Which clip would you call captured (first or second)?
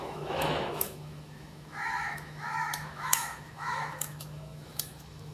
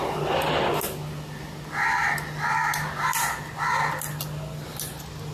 second